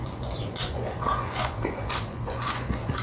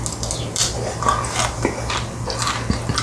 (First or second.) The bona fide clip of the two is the second